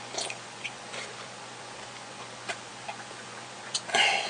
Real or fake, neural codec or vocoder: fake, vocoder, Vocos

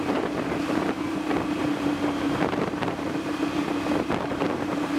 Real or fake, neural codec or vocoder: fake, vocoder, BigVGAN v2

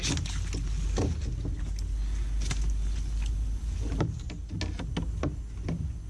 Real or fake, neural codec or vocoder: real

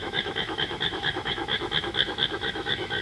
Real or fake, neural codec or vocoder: fake, autoencoder, DAC-VAE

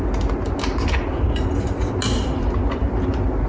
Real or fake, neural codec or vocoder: real